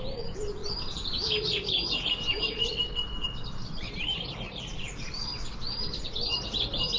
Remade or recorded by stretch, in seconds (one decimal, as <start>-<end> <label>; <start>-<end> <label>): 0.0-7.0 recorded